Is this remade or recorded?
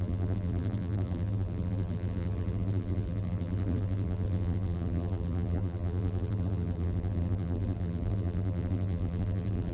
remade